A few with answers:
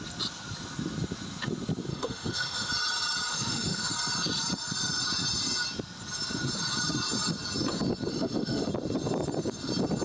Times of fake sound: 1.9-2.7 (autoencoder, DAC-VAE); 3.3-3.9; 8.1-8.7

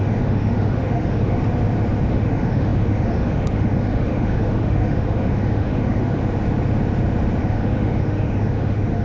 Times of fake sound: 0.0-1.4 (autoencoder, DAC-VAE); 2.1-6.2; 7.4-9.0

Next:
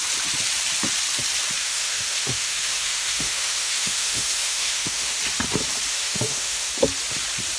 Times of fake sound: 1.6-5.2 (autoencoder, DAC-VAE); 5.9-6.7